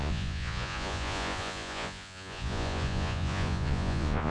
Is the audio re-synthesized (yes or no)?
yes